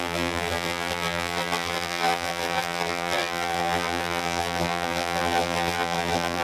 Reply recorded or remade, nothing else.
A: remade